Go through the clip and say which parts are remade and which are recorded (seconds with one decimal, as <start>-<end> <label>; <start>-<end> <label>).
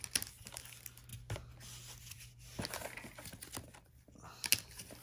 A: 0.0-5.0 recorded